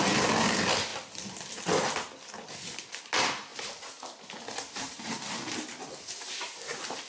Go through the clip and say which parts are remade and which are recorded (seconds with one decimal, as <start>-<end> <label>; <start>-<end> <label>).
0.0-7.1 recorded